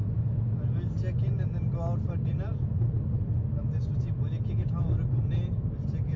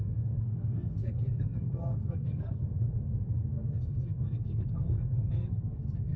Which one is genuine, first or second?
first